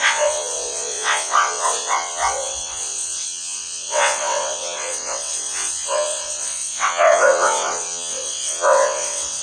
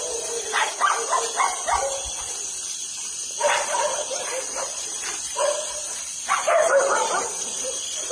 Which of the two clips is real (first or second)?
second